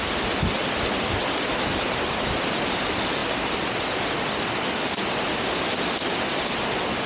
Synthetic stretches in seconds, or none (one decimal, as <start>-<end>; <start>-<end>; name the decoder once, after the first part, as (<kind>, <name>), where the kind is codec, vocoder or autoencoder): none